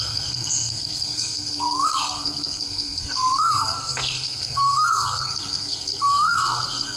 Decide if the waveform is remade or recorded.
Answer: remade